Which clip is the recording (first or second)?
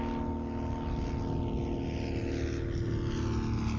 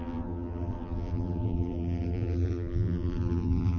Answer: first